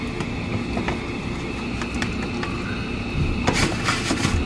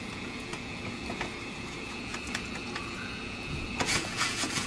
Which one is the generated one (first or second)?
second